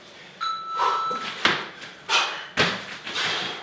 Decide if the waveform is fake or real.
real